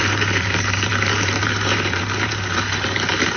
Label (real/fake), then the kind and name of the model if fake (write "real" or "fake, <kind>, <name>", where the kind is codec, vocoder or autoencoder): fake, vocoder, BigVGAN v2